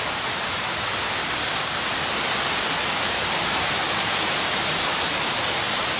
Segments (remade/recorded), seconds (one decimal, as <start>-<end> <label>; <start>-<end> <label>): 0.0-1.2 recorded; 1.2-1.9 remade; 1.9-6.0 recorded